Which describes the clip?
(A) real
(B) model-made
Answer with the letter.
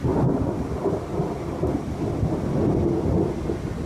A